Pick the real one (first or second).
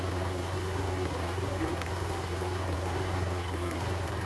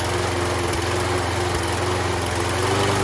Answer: second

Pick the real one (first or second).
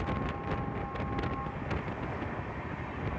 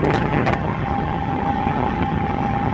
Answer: first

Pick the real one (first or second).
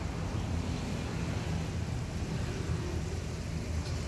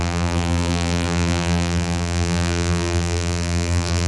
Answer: first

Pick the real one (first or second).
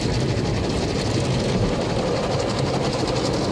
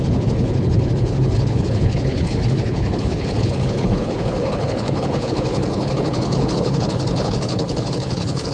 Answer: first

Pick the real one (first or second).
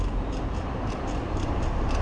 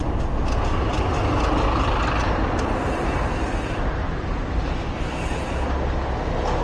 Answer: second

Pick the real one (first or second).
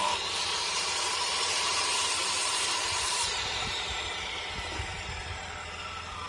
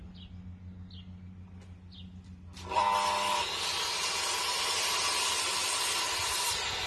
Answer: second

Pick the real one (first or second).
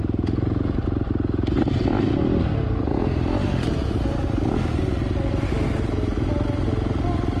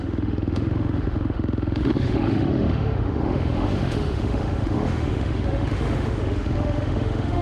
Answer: first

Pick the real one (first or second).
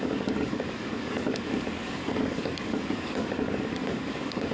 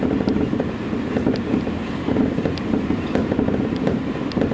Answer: second